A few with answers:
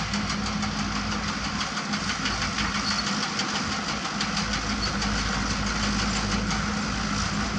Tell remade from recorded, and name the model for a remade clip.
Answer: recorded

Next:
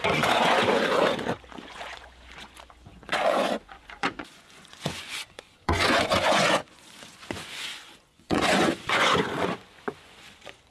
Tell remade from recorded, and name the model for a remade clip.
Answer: remade, vocoder, Vocos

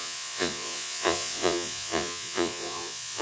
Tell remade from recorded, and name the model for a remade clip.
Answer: remade, vocoder, Vocos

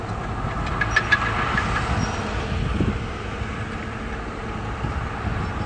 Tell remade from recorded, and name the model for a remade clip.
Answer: recorded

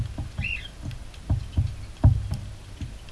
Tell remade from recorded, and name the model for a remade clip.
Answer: recorded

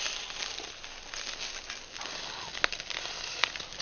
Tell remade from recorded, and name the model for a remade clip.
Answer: recorded